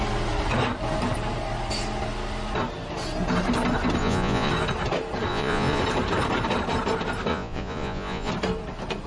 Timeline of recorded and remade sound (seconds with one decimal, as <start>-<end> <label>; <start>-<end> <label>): 0.0-4.0 recorded; 4.0-4.5 remade; 4.5-5.3 recorded; 5.3-5.8 remade; 5.8-7.3 recorded; 7.3-8.3 remade; 8.3-9.1 recorded